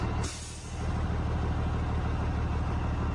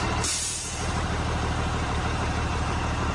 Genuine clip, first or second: first